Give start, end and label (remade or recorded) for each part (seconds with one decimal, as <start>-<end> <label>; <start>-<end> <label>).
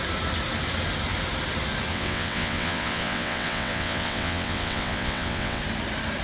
0.0-1.9 recorded; 1.9-5.6 remade; 5.6-6.2 recorded